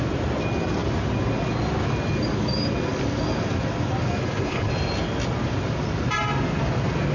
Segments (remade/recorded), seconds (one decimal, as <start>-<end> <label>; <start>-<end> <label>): 0.0-4.2 recorded; 4.2-4.7 remade; 4.7-7.1 recorded